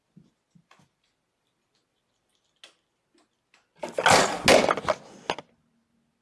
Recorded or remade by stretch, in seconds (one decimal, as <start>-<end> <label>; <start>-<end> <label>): 0.0-2.3 remade; 2.3-6.2 recorded